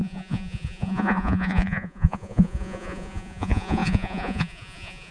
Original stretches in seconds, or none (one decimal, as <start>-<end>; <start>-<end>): none